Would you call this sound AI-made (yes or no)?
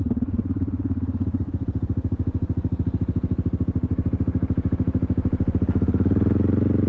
no